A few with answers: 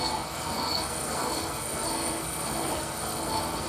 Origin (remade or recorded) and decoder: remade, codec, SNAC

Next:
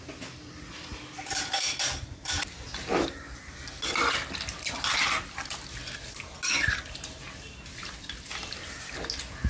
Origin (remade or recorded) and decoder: recorded